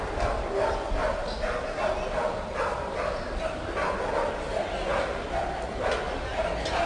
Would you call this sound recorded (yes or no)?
yes